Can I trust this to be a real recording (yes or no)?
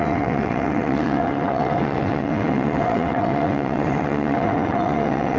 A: no